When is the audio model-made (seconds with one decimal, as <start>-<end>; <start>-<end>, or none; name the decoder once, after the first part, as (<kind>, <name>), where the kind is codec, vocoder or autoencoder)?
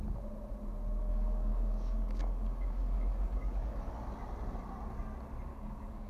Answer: 1.1-3.9 (codec, DAC); 5.5-6.1